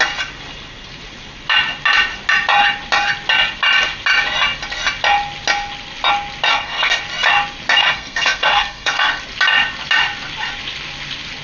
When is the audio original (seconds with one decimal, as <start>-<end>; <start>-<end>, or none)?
0.0-6.5; 7.0-7.8; 9.2-11.4